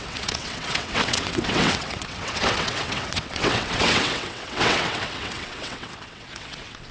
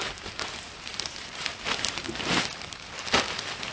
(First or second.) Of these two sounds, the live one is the second